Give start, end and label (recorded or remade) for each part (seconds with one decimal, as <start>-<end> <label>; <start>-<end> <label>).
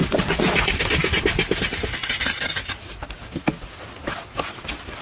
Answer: 0.0-5.0 recorded